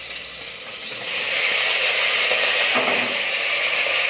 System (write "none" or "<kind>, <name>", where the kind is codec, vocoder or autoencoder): none